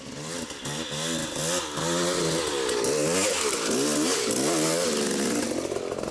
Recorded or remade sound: recorded